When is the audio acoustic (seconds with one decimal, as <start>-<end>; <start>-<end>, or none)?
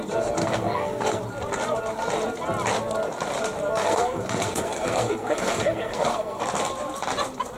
0.0-0.4; 1.2-3.8; 6.4-7.6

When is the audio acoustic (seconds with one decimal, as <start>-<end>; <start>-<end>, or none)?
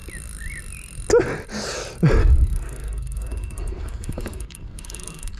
0.0-2.2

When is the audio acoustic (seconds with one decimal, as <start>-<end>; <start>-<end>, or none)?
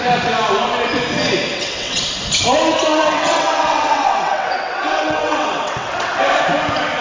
0.0-1.5; 2.0-2.9; 6.2-7.0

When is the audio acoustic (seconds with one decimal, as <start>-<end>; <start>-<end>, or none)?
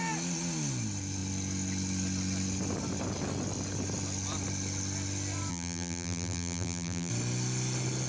0.0-5.5; 7.1-8.1